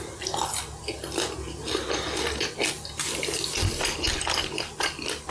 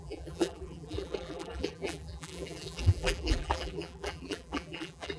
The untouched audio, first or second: first